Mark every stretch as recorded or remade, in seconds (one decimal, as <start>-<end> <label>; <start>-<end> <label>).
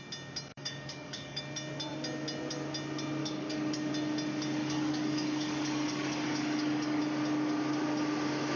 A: 0.0-0.5 recorded; 0.5-1.4 remade; 1.4-3.2 recorded; 3.2-3.9 remade; 3.9-4.6 recorded; 4.6-7.0 remade; 7.0-8.6 recorded